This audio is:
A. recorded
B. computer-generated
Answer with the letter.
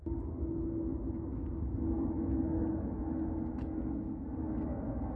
A